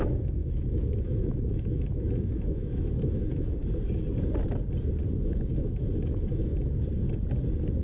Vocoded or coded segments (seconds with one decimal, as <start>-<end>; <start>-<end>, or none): 0.0-3.6; 5.2-6.5